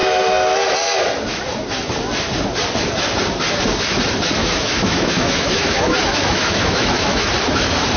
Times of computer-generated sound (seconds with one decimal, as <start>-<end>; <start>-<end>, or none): 4.4-7.3